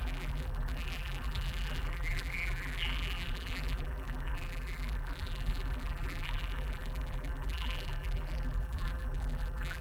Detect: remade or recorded remade